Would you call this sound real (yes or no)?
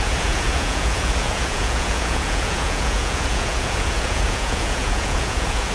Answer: no